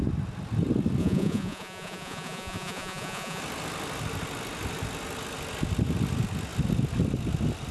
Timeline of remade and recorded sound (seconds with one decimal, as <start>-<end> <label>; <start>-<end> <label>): 0.0-1.0 recorded; 1.0-3.4 remade; 3.4-7.7 recorded